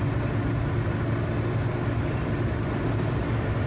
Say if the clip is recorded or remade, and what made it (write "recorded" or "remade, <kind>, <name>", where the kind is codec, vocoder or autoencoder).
recorded